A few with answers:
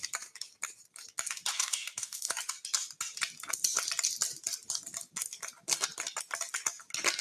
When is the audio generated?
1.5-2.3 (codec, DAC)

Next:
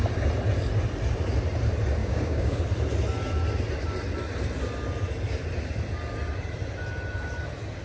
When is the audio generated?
2.0-2.6 (codec, DAC)

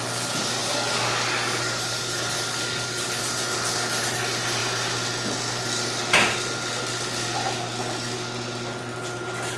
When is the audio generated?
0.6-3.2 (codec, DAC)

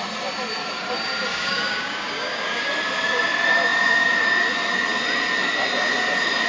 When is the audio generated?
1.3-2.7 (codec, DAC)

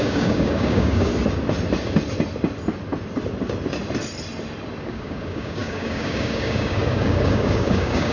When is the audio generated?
0.0-1.1 (codec, DAC); 4.8-8.1

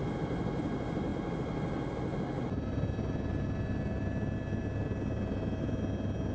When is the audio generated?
none

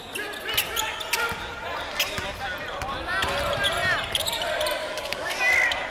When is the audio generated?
4.8-5.4 (codec, DAC)